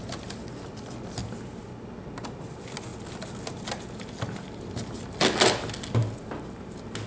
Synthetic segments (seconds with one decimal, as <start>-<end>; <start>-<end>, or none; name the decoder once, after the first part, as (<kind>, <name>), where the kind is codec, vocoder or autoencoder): none